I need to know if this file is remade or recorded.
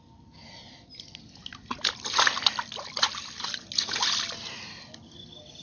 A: recorded